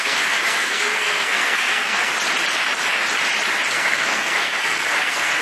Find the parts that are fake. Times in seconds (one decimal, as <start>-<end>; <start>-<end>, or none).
0.0-2.1; 3.7-5.4